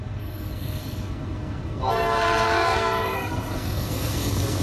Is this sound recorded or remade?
remade